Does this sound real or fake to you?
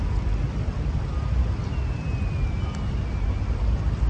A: real